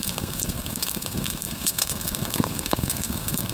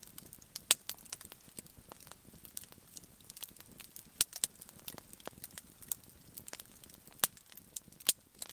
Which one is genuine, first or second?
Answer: second